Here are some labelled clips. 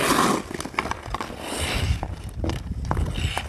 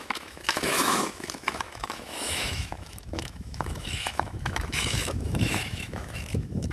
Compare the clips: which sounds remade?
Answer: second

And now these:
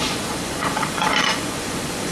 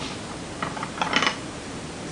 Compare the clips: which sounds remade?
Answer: first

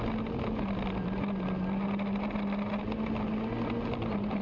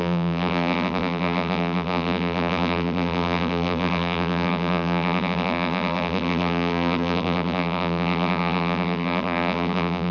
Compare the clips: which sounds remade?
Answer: second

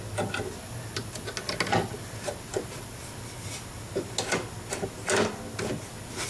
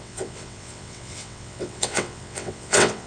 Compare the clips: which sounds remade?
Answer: second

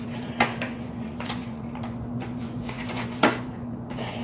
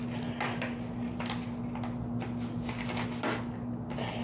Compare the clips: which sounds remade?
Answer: first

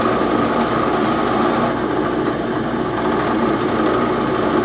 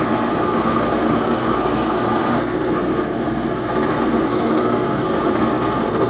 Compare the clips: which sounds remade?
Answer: second